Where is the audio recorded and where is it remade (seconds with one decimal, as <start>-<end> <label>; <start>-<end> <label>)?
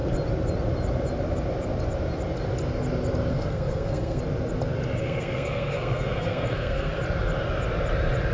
0.0-3.3 recorded; 3.3-4.2 remade; 4.2-5.0 recorded; 5.0-7.0 remade; 7.0-8.3 recorded